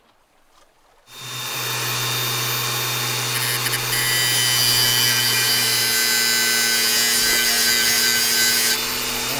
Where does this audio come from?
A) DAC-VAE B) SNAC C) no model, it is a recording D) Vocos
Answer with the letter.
C